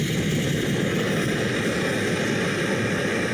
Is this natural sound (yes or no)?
yes